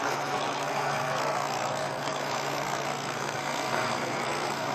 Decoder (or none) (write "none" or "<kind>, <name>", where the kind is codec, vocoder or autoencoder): codec, SNAC